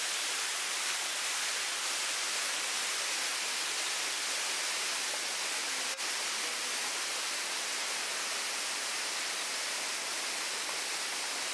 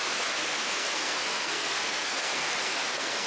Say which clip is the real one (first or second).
first